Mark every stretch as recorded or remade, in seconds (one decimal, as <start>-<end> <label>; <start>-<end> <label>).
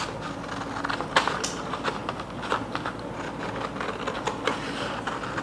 0.0-5.4 recorded